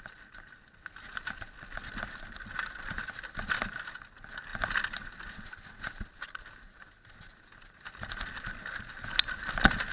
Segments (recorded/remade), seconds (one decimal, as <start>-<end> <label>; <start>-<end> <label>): 0.0-9.9 recorded